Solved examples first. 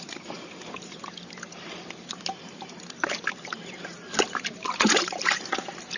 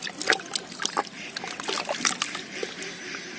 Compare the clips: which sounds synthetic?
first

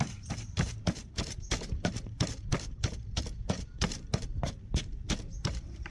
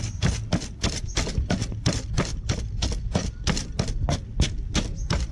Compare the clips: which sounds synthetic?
first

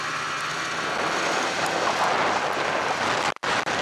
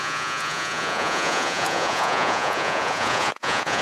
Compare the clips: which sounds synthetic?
second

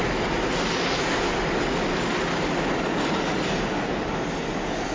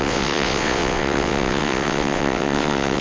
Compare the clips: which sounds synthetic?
second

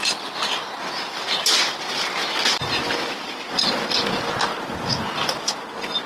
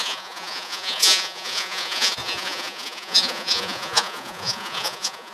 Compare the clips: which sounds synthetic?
second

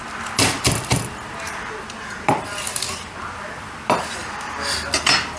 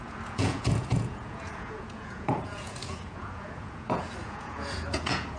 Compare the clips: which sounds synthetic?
second